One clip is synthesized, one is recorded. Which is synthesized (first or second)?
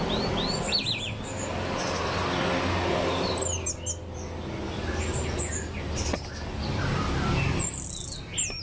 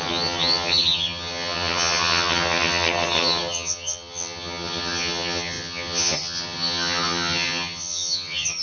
second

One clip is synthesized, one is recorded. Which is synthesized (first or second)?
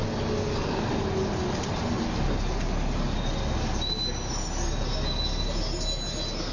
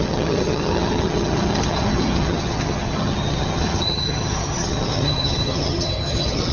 second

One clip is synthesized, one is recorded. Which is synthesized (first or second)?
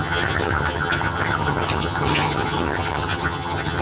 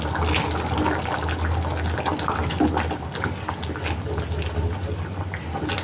first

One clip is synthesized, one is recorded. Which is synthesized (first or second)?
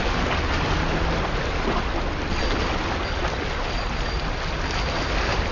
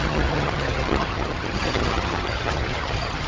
second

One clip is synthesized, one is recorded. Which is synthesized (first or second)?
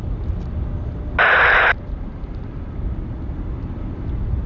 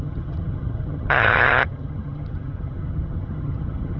second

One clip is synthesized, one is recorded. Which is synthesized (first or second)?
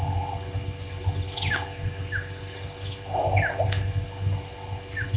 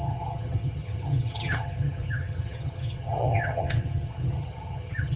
second